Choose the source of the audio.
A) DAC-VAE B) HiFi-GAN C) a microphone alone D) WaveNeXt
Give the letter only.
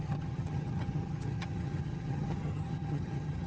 B